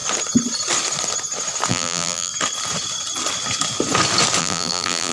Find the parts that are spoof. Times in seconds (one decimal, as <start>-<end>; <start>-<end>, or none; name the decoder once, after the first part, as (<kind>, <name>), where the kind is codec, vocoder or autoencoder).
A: 1.7-2.3 (vocoder, BigVGAN v2); 4.4-5.1